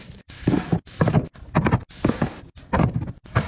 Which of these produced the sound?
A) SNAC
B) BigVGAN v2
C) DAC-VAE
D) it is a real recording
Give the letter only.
D